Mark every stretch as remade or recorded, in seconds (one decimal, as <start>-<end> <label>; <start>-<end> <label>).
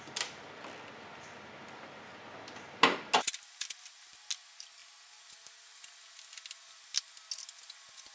0.0-8.1 recorded